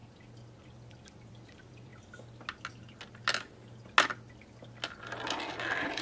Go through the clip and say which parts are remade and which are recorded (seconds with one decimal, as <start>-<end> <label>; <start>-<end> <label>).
0.0-0.6 recorded; 0.6-1.9 remade; 1.9-5.5 recorded; 5.5-6.0 remade